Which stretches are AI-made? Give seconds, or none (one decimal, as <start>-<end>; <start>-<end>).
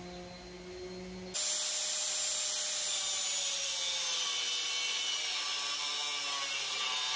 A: none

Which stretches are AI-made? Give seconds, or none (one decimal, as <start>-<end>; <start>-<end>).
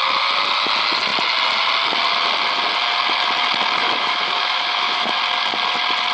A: 3.8-5.2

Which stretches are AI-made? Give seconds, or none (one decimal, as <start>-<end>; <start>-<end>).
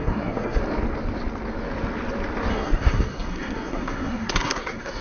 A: 0.0-0.6; 2.5-5.0